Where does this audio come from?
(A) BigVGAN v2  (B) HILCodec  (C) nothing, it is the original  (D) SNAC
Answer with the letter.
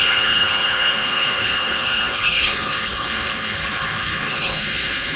B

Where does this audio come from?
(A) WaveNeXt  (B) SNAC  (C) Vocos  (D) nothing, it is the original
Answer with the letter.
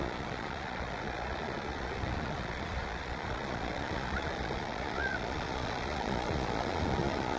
C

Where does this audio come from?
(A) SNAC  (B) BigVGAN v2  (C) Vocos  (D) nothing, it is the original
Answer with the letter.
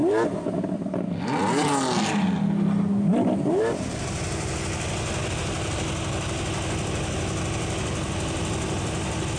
D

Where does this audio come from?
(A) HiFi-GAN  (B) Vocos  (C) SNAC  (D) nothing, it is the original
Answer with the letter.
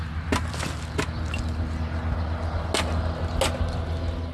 D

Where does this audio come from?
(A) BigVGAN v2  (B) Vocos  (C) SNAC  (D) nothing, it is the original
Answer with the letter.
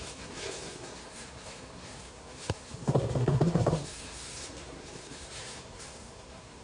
C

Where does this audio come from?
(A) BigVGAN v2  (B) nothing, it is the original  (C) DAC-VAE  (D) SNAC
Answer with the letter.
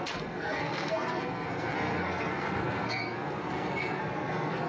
D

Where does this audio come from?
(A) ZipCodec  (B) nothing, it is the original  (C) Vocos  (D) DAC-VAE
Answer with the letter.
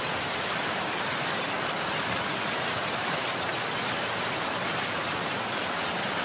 B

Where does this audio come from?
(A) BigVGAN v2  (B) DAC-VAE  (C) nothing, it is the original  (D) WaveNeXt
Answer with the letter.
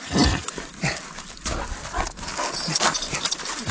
C